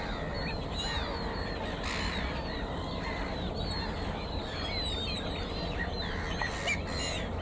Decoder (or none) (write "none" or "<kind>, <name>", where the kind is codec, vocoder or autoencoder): none